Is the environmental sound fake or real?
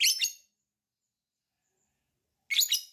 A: real